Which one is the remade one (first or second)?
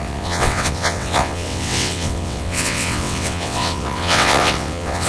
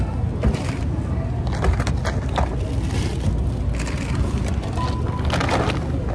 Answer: first